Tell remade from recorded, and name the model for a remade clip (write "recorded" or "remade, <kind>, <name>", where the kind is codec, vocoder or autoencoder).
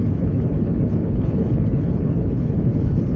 remade, codec, HILCodec